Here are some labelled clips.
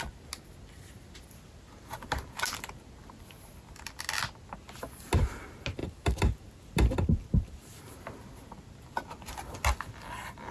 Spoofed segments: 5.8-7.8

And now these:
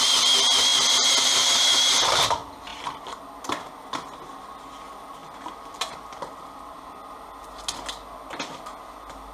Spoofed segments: 0.7-2.2; 2.7-3.2; 5.2-6.9

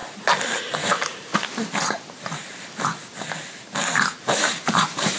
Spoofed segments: 0.6-1.3; 4.4-5.2

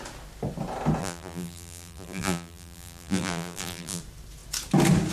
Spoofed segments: 1.0-4.0

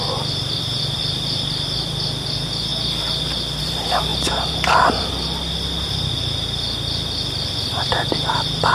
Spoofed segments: 4.1-5.1